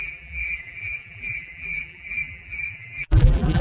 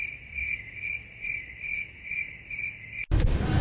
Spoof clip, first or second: first